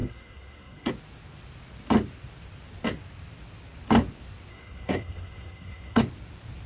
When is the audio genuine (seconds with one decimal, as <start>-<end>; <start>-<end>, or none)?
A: 0.9-4.5; 6.0-6.7